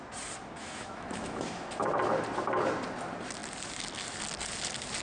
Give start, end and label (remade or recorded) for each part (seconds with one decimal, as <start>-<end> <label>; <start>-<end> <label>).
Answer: 0.0-0.6 recorded; 0.6-1.9 remade; 1.9-5.0 recorded